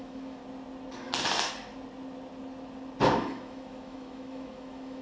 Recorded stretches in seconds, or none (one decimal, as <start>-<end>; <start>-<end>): 0.4-3.2